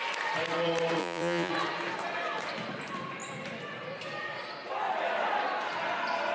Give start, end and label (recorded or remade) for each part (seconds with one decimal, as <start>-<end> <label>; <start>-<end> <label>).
0.0-1.0 recorded; 1.0-1.5 remade; 1.5-6.3 recorded